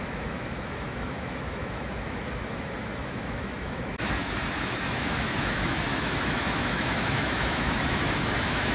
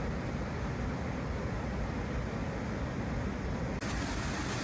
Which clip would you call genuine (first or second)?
second